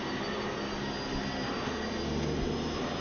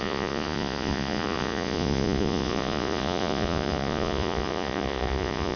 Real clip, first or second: first